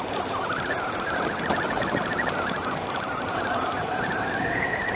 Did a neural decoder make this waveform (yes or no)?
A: yes